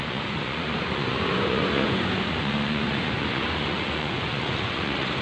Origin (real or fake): fake